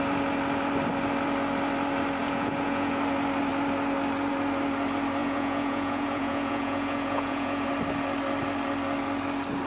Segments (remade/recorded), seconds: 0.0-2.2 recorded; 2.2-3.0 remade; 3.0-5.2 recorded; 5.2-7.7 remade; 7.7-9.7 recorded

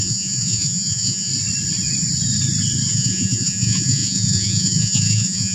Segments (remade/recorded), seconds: 0.0-1.3 remade; 1.3-2.9 recorded; 2.9-5.5 remade

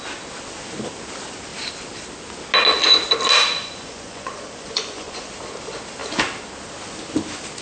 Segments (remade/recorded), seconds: 0.0-3.6 recorded; 3.6-5.3 remade; 5.3-7.6 recorded

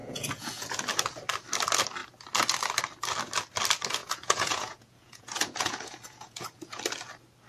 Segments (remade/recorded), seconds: 0.0-0.7 remade; 0.7-4.0 recorded; 4.0-6.8 remade; 6.8-7.5 recorded

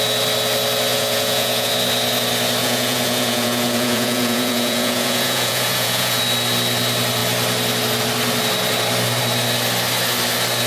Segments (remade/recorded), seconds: 0.0-0.9 recorded; 0.9-1.7 remade; 1.7-2.6 recorded; 2.6-6.2 remade; 6.2-10.7 recorded